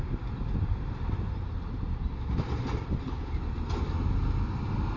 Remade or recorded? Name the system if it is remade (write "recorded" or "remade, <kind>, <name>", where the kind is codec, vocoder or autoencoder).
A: recorded